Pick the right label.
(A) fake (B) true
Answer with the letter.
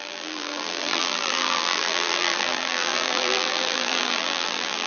A